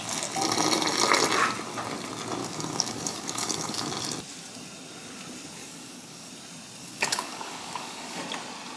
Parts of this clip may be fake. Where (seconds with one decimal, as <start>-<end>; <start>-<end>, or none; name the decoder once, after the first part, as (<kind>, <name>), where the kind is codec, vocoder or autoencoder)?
2.4-3.9 (codec, DAC); 5.6-6.3; 6.8-8.2